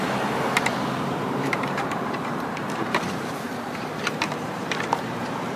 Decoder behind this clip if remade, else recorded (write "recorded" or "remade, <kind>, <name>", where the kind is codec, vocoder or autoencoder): remade, vocoder, BigVGAN v2